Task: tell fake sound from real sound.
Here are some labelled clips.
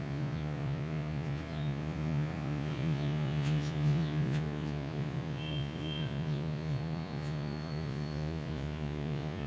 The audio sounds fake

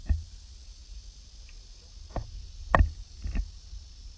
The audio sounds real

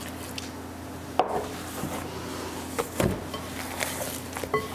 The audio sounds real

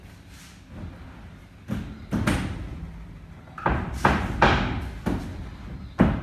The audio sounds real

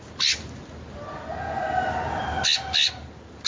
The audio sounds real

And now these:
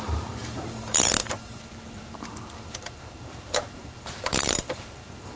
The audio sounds fake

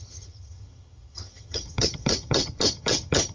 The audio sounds fake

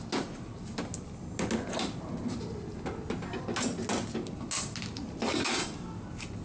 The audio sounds real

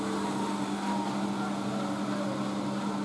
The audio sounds real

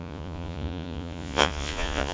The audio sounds fake